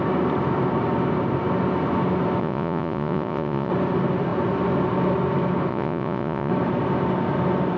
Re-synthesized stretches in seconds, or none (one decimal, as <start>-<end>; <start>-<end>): 2.4-3.7; 5.7-6.5